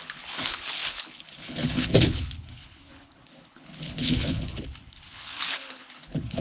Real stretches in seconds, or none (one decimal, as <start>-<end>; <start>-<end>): none